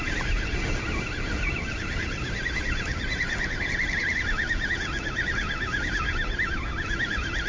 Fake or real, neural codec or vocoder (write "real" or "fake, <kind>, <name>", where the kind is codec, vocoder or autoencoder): fake, vocoder, BigVGAN v2